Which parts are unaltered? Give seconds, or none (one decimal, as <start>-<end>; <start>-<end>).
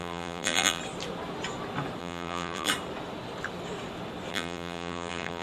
0.8-2.0; 2.7-4.3